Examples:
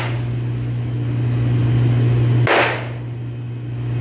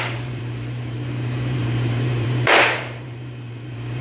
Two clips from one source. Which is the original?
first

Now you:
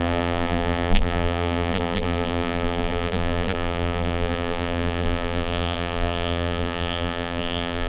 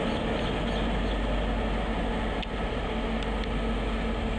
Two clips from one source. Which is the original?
second